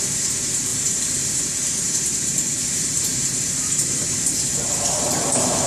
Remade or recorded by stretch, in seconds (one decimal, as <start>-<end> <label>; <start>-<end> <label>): 0.0-4.5 remade; 4.5-5.0 recorded; 5.0-5.7 remade